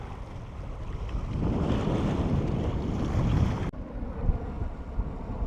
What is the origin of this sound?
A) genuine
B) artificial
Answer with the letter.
A